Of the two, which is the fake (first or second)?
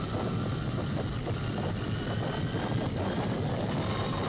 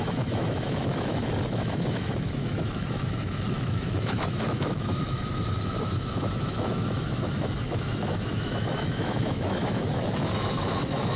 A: second